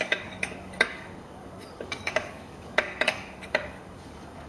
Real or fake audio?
fake